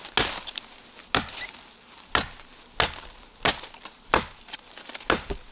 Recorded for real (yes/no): yes